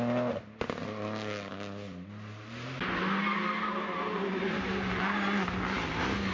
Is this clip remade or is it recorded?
recorded